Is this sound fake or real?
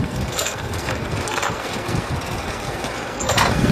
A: fake